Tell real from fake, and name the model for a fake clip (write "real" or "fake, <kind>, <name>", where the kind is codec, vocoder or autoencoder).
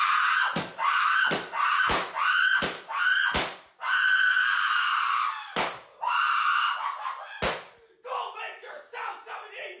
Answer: real